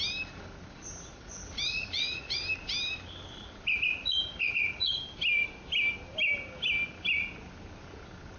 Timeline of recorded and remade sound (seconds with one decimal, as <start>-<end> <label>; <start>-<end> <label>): 0.0-1.1 recorded; 1.1-2.4 remade; 2.4-4.0 recorded; 4.0-5.0 remade; 5.0-8.4 recorded